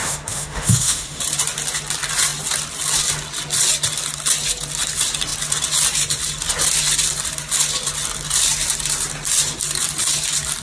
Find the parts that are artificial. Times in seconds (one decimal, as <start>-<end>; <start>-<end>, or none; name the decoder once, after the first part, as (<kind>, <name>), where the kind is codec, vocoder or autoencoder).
0.0-1.2 (autoencoder, DAC-VAE)